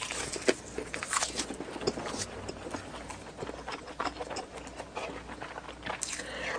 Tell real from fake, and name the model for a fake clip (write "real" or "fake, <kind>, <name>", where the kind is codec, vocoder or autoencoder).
real